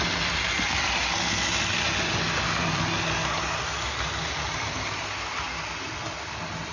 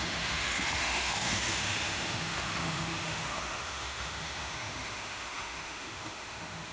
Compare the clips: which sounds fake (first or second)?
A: second